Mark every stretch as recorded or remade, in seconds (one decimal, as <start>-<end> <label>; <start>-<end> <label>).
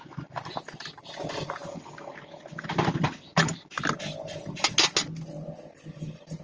0.0-6.4 recorded